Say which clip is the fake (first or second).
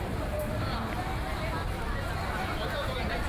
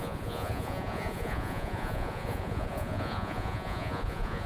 second